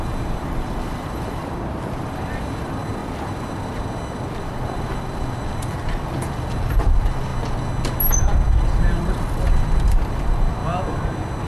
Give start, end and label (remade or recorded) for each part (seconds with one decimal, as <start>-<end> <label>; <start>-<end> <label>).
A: 0.0-3.0 remade; 3.0-4.5 recorded; 4.5-7.3 remade; 7.3-8.8 recorded; 8.8-10.6 remade; 10.6-11.5 recorded

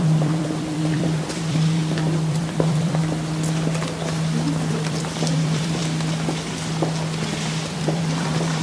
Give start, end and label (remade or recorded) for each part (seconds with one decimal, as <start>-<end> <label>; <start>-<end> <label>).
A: 0.0-1.8 remade; 1.8-2.3 recorded; 2.3-3.0 remade; 3.0-4.7 recorded; 4.7-5.8 remade; 5.8-7.7 recorded; 7.7-8.6 remade

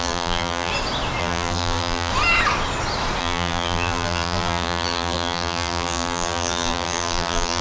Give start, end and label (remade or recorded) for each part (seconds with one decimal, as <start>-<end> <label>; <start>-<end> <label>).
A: 0.0-0.7 remade; 0.7-1.2 recorded; 1.2-2.1 remade; 2.1-3.2 recorded; 3.2-7.6 remade

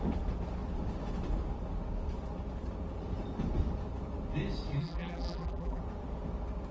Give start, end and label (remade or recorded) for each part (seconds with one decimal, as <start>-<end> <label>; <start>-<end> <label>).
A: 0.0-4.8 recorded; 4.8-5.8 remade; 5.8-6.7 recorded

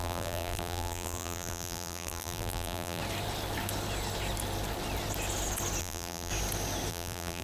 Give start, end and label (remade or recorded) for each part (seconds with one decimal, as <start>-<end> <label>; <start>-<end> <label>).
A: 0.0-3.0 remade; 3.0-5.8 recorded; 5.8-6.3 remade; 6.3-6.9 recorded; 6.9-7.4 remade